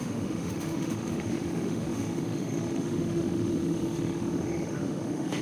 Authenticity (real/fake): fake